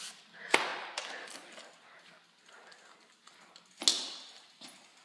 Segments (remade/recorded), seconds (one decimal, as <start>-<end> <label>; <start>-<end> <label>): 0.0-5.0 recorded